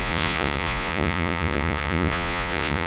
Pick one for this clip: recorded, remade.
remade